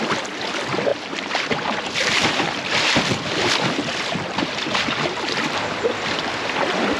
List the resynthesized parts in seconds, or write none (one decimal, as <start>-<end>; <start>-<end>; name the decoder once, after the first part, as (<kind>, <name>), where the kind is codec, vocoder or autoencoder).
none